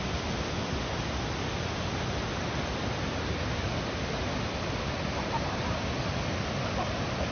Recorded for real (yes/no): yes